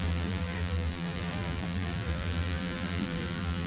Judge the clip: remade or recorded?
remade